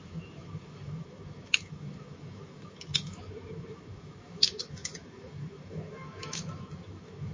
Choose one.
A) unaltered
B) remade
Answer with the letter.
B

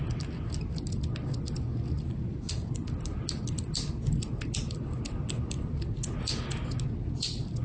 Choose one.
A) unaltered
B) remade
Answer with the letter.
A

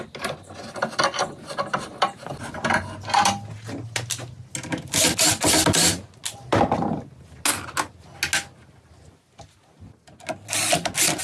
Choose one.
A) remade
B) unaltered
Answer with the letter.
B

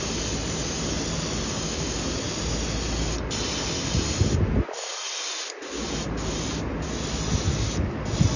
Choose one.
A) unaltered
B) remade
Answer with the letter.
A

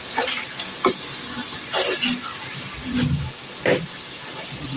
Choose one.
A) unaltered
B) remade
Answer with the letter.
A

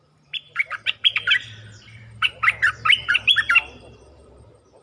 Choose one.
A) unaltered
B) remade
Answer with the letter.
B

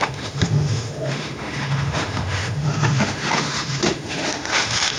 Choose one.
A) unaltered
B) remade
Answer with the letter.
B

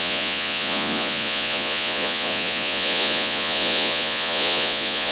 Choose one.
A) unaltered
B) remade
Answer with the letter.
B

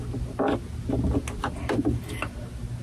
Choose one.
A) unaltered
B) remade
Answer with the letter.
A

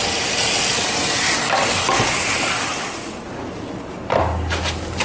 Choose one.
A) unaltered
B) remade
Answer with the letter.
A